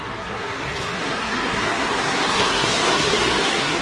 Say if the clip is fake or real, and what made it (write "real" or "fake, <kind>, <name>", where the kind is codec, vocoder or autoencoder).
fake, codec, SNAC